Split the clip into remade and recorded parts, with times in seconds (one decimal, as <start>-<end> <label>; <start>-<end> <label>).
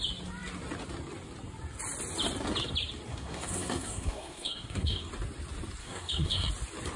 0.0-3.1 recorded; 3.1-5.1 remade; 5.1-5.8 recorded; 5.8-6.5 remade; 6.5-7.0 recorded